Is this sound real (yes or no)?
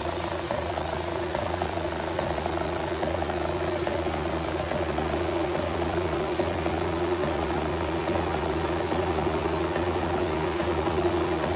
no